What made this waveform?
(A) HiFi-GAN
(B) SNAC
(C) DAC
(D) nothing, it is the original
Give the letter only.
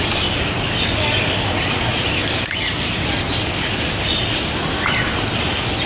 D